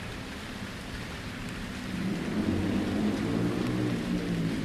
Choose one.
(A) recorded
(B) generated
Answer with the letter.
A